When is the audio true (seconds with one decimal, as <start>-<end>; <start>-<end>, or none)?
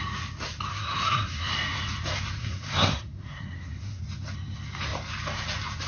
0.0-0.7; 1.5-2.4; 4.0-5.9